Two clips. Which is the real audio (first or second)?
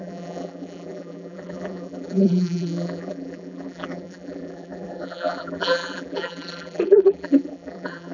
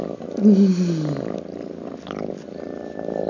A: second